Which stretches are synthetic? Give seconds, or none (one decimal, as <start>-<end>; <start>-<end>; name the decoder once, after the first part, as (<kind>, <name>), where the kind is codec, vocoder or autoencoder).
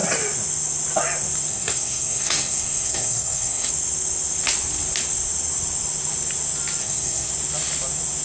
1.5-3.7 (codec, SNAC); 6.8-7.3